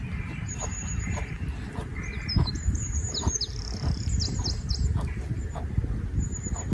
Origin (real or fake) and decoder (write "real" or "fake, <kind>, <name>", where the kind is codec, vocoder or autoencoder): real